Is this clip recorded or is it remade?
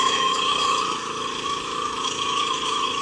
remade